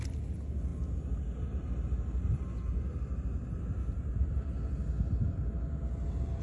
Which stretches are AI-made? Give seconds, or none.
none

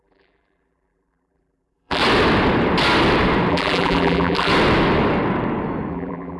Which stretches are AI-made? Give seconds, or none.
0.0-2.0 (vocoder, BigVGAN v2); 3.5-4.5; 5.9-6.4

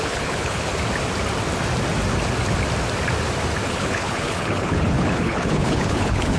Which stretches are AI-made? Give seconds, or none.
0.0-0.7 (codec, HILCodec); 3.7-6.4

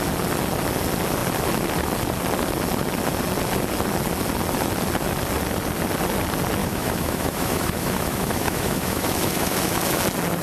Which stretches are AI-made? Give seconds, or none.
6.6-10.0 (autoencoder, DAC-VAE)